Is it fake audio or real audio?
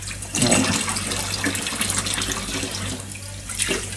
real